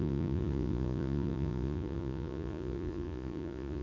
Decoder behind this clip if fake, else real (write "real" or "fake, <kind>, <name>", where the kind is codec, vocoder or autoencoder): fake, vocoder, Vocos